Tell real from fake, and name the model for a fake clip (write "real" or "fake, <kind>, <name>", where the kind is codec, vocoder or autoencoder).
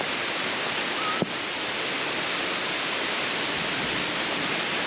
real